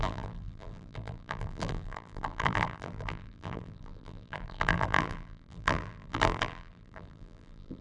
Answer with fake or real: fake